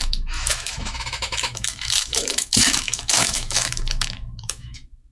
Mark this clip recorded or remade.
remade